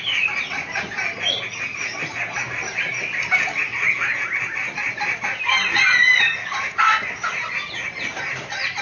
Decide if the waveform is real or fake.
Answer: real